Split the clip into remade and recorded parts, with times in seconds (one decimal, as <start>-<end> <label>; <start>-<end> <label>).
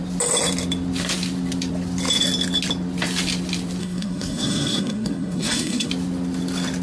0.0-3.8 recorded; 3.8-5.9 remade; 5.9-6.8 recorded